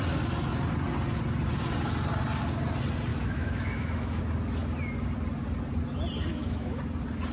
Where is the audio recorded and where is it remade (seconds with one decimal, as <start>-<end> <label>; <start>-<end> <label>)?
0.0-3.1 recorded; 3.1-4.2 remade; 4.2-6.3 recorded; 6.3-6.8 remade; 6.8-7.3 recorded